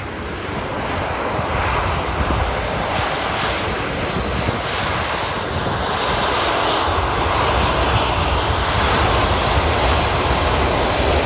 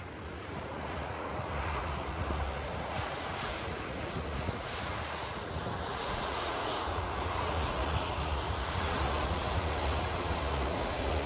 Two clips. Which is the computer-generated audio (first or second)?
second